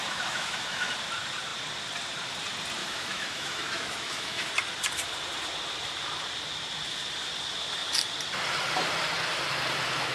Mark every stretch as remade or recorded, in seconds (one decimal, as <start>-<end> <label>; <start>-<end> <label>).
0.0-0.9 remade; 0.9-2.8 recorded; 2.8-4.5 remade; 4.5-10.1 recorded

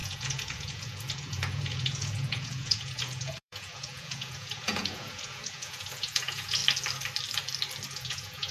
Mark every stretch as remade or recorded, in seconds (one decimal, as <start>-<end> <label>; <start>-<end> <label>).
0.0-6.6 remade; 6.6-7.9 recorded; 7.9-8.5 remade

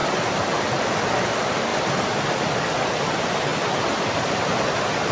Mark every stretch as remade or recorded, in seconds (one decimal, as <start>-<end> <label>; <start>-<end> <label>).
0.0-5.1 recorded

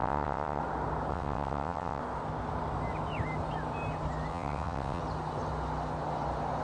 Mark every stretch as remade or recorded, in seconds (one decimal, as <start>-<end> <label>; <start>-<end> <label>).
0.0-0.6 remade; 0.6-1.1 recorded; 1.1-2.0 remade; 2.0-4.3 recorded; 4.3-5.0 remade; 5.0-6.6 recorded

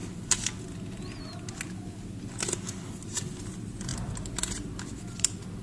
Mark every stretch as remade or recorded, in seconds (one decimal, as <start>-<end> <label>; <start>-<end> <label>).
0.0-3.4 recorded; 3.4-3.9 remade; 3.9-5.6 recorded

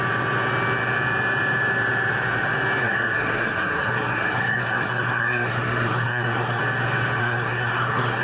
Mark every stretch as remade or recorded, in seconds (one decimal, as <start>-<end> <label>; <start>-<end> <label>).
0.0-2.8 recorded; 2.8-6.6 remade; 6.6-7.2 recorded; 7.2-8.2 remade

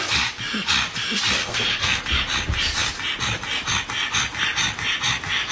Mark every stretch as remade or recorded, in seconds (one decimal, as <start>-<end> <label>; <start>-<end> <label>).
0.0-1.4 recorded; 1.4-2.0 remade; 2.0-5.5 recorded

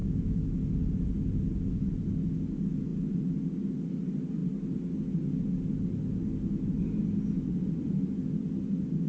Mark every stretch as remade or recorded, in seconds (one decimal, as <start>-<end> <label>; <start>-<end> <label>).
0.0-0.6 remade; 0.6-9.1 recorded